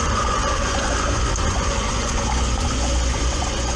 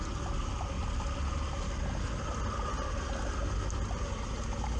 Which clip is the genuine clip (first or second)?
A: second